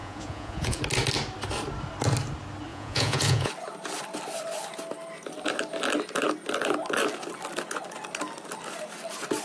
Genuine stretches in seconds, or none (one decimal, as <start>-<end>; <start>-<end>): 0.8-2.7; 3.5-9.4